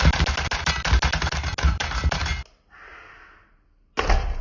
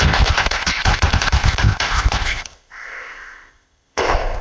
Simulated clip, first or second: second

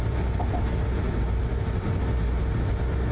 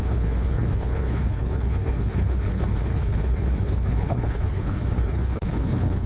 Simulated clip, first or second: second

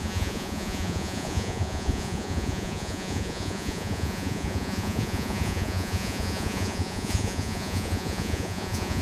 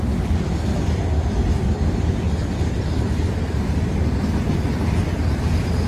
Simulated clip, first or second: first